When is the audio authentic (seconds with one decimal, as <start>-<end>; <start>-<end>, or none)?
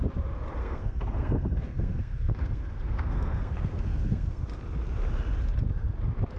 0.0-0.6; 4.4-6.4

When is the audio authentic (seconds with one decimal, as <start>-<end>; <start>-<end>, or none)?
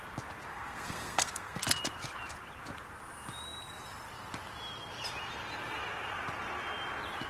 0.0-0.5; 1.6-7.3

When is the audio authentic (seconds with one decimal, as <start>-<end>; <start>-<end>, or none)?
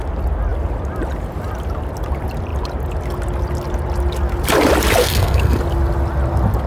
0.0-5.0; 5.6-6.7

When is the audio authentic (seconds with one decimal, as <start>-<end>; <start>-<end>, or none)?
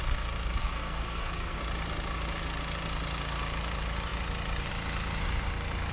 0.0-0.6; 1.6-5.9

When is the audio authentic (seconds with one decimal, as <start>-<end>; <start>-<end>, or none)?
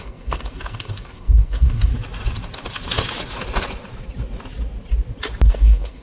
1.9-5.5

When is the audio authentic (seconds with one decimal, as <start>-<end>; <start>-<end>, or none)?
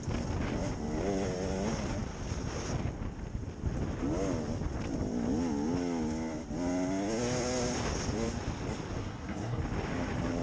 0.0-9.0; 9.6-10.4